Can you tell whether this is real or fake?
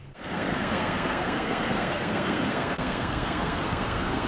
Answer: fake